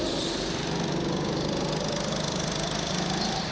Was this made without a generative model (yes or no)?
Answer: yes